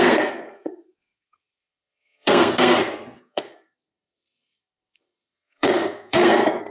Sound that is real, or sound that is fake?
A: fake